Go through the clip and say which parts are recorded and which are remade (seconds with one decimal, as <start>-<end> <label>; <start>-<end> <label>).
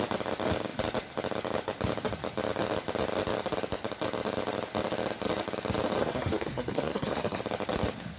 0.0-6.0 recorded; 6.0-7.4 remade; 7.4-8.2 recorded